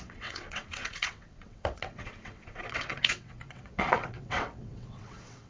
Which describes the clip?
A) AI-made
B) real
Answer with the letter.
A